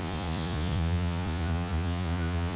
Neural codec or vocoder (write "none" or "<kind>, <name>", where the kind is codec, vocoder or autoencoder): vocoder, Vocos